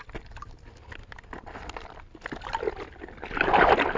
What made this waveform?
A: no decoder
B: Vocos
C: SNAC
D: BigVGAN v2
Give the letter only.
A